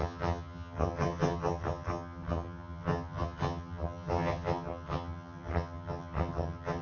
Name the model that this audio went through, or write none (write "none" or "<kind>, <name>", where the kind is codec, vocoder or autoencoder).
vocoder, HiFi-GAN